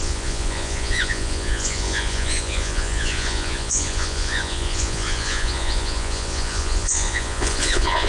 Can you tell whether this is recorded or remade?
remade